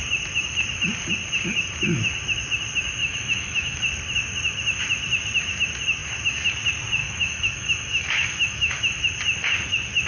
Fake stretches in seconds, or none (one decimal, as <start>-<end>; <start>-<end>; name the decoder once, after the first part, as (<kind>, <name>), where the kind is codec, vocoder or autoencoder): 3.0-3.8 (autoencoder, DAC-VAE); 7.0-9.0